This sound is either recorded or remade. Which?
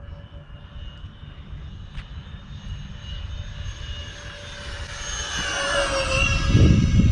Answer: recorded